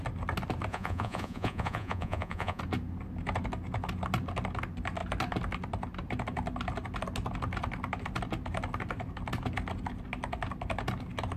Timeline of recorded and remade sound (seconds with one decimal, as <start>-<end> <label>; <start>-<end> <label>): 0.0-0.7 recorded; 0.7-2.6 remade; 2.6-11.4 recorded